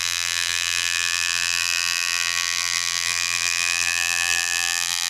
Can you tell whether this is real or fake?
fake